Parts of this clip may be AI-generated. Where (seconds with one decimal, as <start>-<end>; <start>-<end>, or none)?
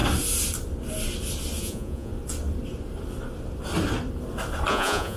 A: 1.6-2.1; 4.7-5.2